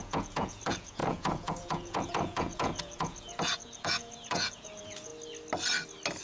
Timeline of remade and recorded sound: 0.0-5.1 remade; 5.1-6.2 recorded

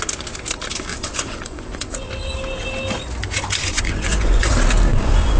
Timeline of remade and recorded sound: 0.0-0.9 recorded; 0.9-2.1 remade; 2.1-3.6 recorded; 3.6-4.5 remade; 4.5-4.9 recorded; 4.9-5.4 remade

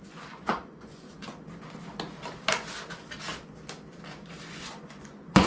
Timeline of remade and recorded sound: 0.0-1.2 remade; 1.2-4.5 recorded; 4.5-5.5 remade